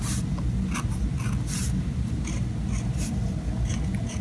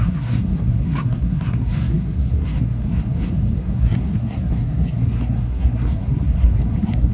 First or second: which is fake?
second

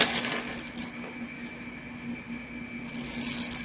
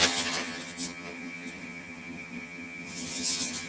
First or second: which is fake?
second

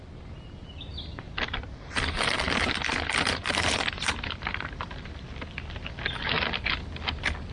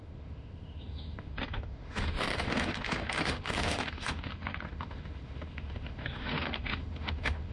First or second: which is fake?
second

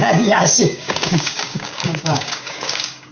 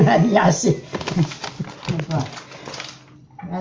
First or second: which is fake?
first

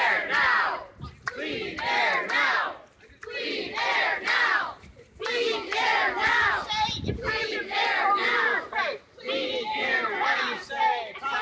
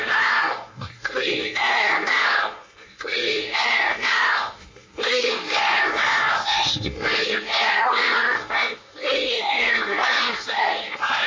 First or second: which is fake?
second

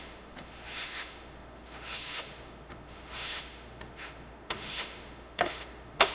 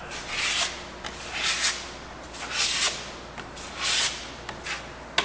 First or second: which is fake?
first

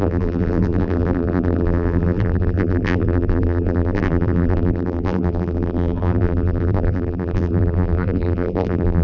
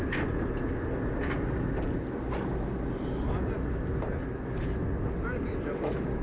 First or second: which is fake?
first